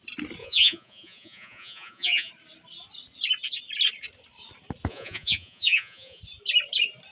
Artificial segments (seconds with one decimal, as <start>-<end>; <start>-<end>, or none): 0.4-2.3; 4.9-6.2